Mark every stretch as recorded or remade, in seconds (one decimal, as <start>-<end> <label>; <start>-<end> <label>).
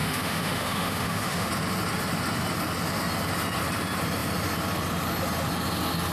0.0-1.5 remade; 1.5-6.1 recorded